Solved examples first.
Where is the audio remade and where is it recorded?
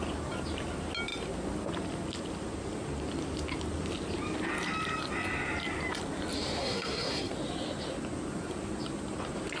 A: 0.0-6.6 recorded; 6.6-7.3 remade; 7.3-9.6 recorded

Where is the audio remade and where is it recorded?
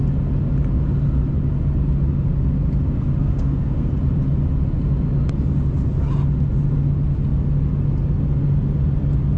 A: 0.0-3.2 recorded; 3.2-3.9 remade; 3.9-9.4 recorded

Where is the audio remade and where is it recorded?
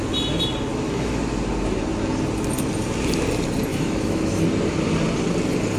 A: 0.0-0.7 recorded; 0.7-1.2 remade; 1.2-3.7 recorded; 3.7-4.3 remade; 4.3-5.8 recorded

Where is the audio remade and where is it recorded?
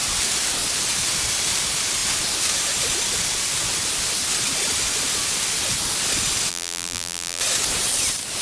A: 0.0-6.5 recorded; 6.5-7.4 remade; 7.4-8.4 recorded